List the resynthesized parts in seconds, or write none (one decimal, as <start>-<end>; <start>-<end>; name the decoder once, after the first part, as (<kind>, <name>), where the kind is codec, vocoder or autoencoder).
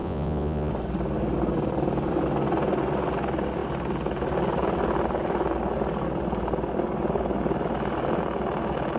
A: 0.0-0.7 (vocoder, Vocos)